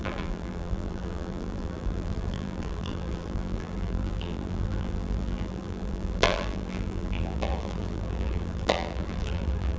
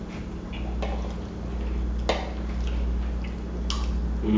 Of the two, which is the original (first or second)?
second